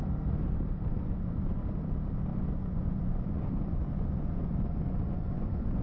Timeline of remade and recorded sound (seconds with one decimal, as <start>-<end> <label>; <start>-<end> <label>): 0.0-0.9 recorded; 0.9-1.6 remade; 1.6-2.3 recorded; 2.3-5.8 remade